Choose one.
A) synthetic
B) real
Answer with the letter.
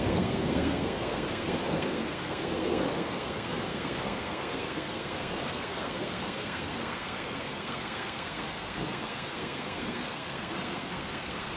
A